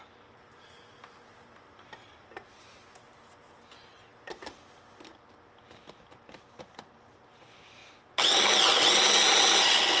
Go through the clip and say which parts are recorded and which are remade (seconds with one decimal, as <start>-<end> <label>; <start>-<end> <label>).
0.0-10.0 recorded